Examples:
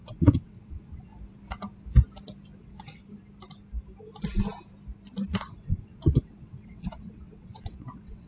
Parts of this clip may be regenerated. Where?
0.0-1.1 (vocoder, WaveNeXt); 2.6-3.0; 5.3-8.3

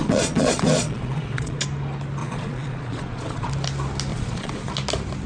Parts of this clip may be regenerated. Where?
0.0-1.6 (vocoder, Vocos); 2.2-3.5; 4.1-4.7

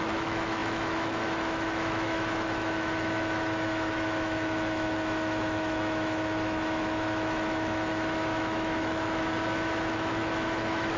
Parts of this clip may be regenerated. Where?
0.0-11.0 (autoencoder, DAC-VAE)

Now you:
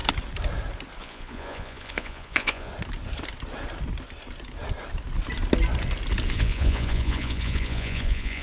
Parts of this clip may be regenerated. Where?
1.0-2.7 (vocoder, Vocos); 6.3-8.4